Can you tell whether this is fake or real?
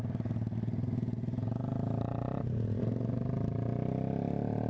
real